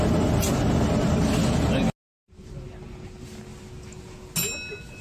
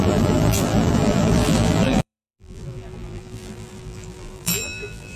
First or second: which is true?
first